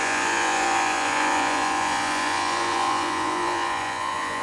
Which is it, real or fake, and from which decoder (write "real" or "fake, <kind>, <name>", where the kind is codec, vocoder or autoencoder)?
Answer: fake, vocoder, Vocos